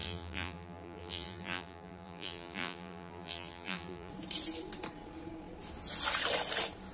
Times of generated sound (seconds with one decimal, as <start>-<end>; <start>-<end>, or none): 0.0-4.1